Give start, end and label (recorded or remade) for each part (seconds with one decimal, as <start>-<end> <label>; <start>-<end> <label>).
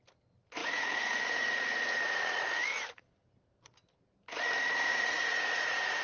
0.0-0.6 recorded; 0.6-2.9 remade; 2.9-4.9 recorded; 4.9-6.0 remade